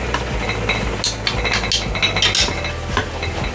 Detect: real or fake real